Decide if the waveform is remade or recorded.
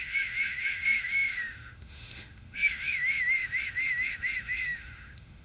remade